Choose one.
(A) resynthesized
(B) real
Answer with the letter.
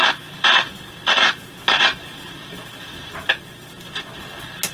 B